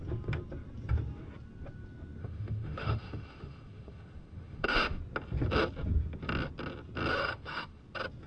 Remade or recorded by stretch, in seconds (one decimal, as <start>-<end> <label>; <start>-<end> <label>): 0.0-2.2 recorded; 2.2-5.0 remade; 5.0-7.2 recorded; 7.2-7.8 remade; 7.8-8.3 recorded